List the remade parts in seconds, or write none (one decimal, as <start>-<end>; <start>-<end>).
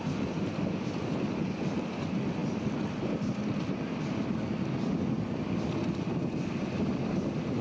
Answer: none